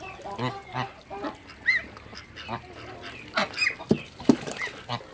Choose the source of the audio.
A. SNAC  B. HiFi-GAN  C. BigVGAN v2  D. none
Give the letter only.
D